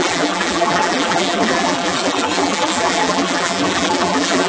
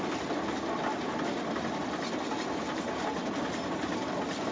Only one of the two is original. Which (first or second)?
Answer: second